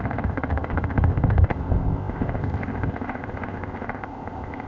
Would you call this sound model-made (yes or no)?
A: yes